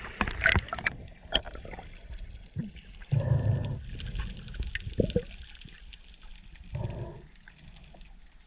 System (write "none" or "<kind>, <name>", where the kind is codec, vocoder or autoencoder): none